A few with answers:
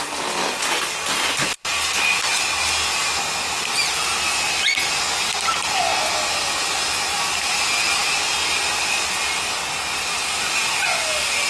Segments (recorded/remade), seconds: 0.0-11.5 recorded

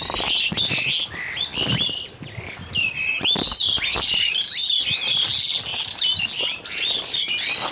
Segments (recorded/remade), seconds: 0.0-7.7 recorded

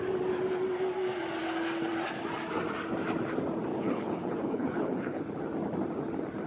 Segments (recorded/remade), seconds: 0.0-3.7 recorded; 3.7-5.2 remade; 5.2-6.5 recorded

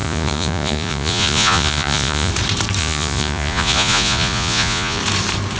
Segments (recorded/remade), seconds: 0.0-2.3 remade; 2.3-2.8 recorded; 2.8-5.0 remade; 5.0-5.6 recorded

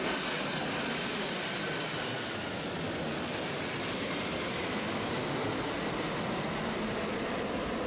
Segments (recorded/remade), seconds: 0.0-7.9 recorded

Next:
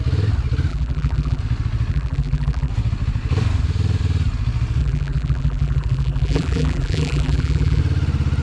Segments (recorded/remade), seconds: 0.0-0.7 recorded; 0.7-1.4 remade; 1.4-1.9 recorded; 1.9-2.7 remade; 2.7-4.8 recorded; 4.8-7.8 remade; 7.8-8.4 recorded

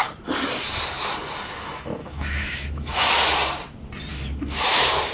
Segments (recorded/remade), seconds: 0.0-2.0 recorded; 2.0-3.1 remade; 3.1-4.1 recorded; 4.1-5.1 remade